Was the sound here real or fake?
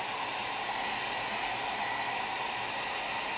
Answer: real